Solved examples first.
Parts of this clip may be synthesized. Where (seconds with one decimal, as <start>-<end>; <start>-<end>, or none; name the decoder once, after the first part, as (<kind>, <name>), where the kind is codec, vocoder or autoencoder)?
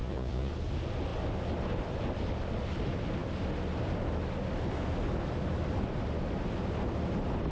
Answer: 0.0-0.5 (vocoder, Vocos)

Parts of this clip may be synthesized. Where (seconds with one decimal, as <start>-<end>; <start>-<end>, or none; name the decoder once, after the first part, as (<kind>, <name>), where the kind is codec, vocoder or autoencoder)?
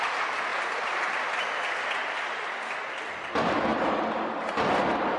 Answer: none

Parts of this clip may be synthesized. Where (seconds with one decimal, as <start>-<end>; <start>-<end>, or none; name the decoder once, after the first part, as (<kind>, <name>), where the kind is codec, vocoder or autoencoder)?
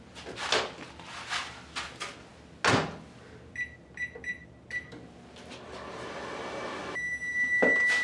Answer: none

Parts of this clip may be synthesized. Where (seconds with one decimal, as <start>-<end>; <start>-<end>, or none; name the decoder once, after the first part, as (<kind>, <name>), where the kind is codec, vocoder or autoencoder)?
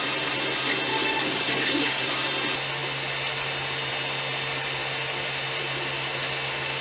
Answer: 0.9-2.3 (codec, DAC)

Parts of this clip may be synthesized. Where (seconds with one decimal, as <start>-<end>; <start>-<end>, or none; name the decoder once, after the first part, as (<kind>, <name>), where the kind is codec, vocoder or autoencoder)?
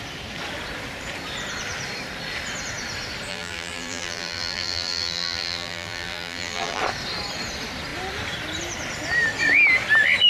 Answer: 3.3-6.8 (vocoder, BigVGAN v2)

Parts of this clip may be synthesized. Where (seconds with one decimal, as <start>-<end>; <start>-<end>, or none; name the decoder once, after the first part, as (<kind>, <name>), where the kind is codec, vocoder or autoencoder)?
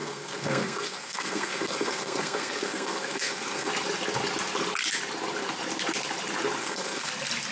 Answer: 0.0-3.7 (codec, SNAC); 6.6-7.1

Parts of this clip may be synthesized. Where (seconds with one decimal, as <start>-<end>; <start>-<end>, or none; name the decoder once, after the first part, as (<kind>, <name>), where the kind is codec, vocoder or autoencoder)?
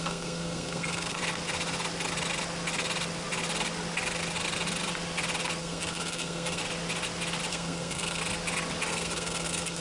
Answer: 0.0-1.2 (codec, SNAC); 5.6-6.6; 7.5-8.2; 8.9-9.8